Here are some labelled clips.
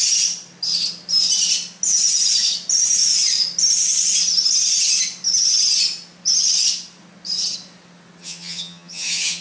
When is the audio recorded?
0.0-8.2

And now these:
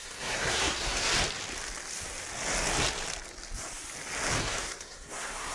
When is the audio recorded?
1.1-4.4

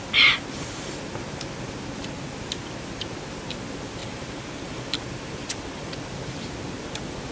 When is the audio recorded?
0.0-4.0; 5.9-7.3

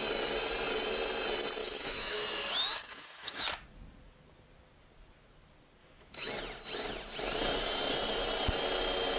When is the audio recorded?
0.0-1.6; 2.2-2.6; 3.4-5.8; 6.3-9.2

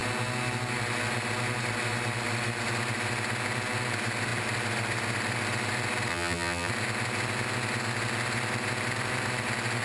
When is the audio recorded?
0.0-6.1; 6.7-9.8